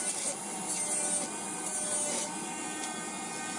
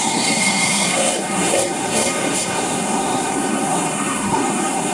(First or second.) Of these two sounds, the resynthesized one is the second